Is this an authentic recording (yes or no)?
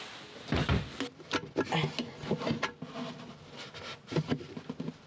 yes